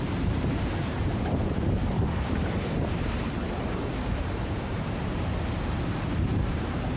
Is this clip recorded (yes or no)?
no